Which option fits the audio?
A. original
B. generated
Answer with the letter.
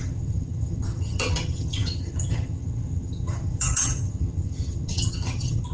B